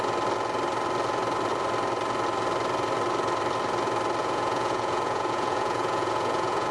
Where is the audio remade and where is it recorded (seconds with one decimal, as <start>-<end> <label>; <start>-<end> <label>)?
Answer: 0.0-4.2 recorded; 4.2-6.7 remade